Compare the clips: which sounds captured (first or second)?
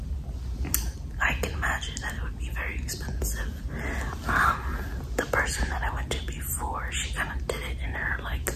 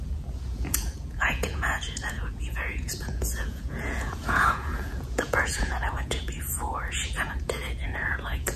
first